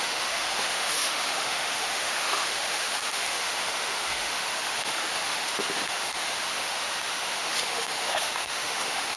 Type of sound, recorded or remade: remade